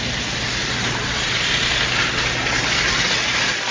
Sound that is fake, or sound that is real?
real